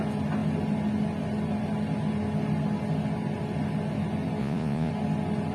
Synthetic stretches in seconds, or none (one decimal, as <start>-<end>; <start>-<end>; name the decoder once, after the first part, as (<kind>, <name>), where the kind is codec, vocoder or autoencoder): 4.4-4.9 (vocoder, Vocos)